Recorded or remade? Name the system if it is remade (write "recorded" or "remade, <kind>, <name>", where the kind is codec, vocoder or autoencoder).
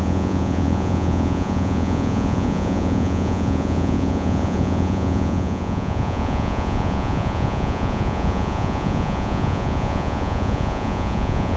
remade, vocoder, Vocos